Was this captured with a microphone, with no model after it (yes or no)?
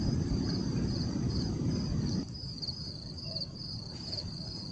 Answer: no